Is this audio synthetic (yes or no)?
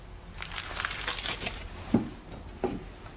no